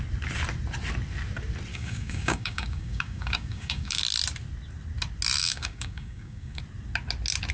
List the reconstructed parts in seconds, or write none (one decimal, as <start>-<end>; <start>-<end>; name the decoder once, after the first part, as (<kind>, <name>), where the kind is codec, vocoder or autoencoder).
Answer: 1.7-4.0 (codec, DAC); 5.4-6.6